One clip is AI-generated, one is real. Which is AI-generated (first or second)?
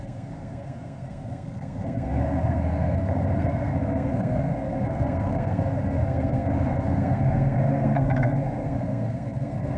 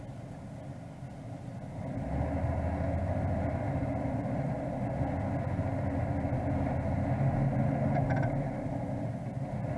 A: first